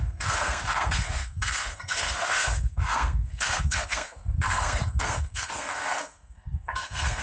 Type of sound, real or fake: fake